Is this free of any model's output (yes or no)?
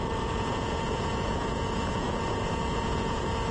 no